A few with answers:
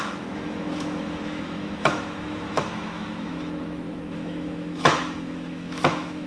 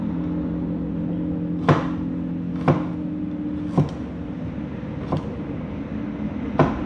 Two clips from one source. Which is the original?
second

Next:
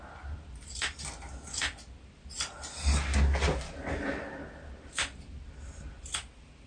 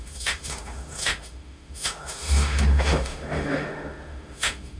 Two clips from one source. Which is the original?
first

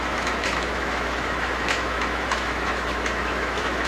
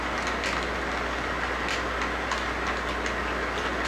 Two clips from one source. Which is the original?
second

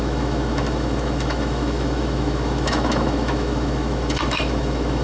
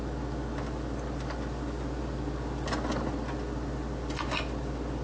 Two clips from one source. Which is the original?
second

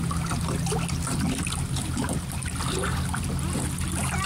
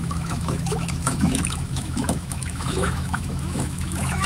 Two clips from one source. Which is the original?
first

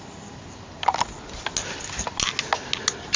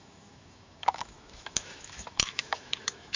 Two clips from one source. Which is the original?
first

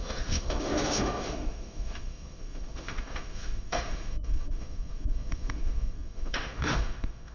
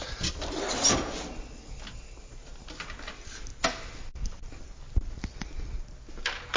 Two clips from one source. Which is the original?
second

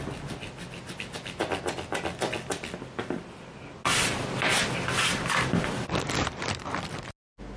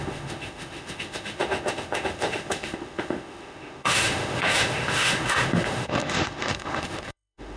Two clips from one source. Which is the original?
first